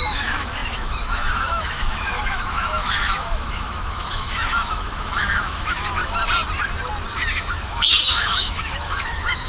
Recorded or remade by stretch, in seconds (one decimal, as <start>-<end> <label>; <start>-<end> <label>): 0.0-6.0 remade; 6.0-7.5 recorded; 7.5-9.5 remade